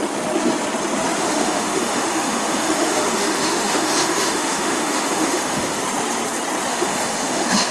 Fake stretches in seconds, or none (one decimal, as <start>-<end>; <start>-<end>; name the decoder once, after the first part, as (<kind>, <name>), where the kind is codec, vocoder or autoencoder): 1.2-5.8 (autoencoder, DAC-VAE); 6.7-7.7